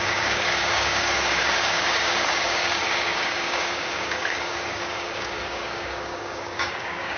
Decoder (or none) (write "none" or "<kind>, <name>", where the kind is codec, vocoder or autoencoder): codec, DAC